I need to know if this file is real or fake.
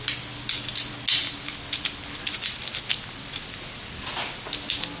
real